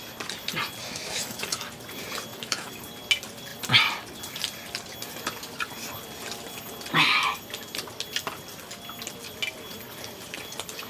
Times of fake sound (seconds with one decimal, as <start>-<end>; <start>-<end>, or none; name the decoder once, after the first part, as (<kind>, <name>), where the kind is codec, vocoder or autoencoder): 0.8-1.7 (autoencoder, DAC-VAE); 2.3-2.8